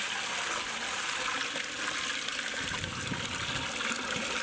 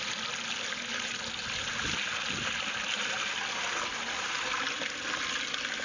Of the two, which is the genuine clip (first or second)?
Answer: second